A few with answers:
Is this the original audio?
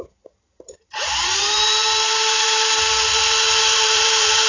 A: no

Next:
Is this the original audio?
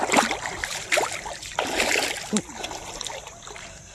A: no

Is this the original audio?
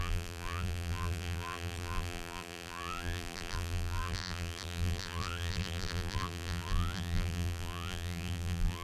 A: no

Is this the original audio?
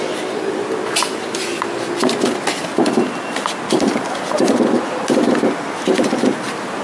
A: yes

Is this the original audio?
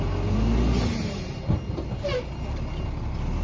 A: yes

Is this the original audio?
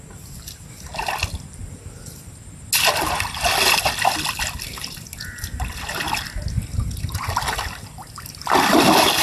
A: yes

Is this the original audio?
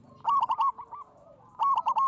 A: yes